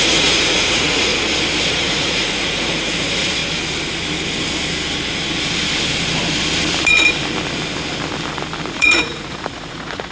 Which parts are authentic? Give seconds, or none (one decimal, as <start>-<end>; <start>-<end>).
1.1-1.7; 3.4-8.7